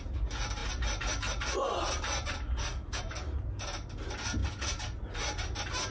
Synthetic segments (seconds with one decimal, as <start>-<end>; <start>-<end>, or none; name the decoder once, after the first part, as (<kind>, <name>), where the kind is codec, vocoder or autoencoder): none